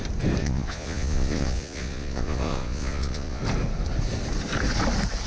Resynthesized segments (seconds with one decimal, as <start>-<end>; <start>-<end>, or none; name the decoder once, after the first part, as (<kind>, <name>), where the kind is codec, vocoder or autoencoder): 0.4-3.4 (vocoder, Vocos)